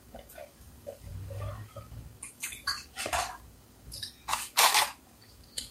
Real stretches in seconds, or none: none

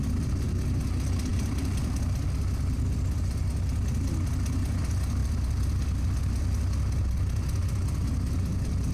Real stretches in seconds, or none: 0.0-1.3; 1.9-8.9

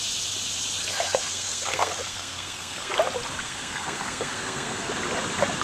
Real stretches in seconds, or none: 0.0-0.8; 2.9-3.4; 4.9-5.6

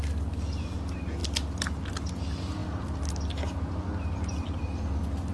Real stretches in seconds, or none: 0.0-5.3

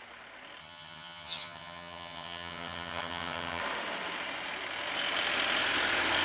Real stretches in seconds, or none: 0.0-0.6; 3.6-6.2

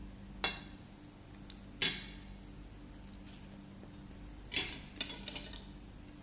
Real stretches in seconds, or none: 0.0-6.2

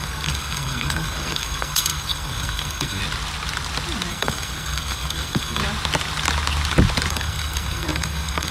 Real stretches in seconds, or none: 3.0-4.1; 5.6-7.1